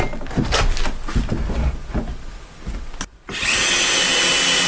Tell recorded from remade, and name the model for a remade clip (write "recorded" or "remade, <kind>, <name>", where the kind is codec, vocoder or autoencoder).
recorded